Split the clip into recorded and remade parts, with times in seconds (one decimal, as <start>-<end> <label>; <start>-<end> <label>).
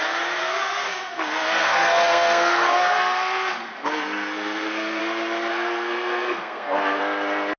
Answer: 0.0-0.4 recorded; 0.4-5.0 remade; 5.0-5.5 recorded; 5.5-7.0 remade; 7.0-7.6 recorded